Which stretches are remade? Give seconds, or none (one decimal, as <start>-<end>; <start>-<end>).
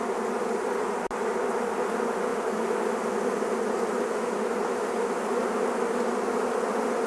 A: none